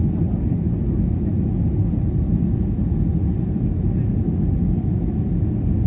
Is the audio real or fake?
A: real